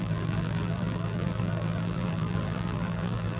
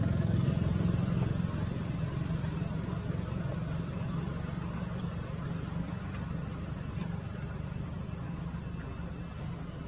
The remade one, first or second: first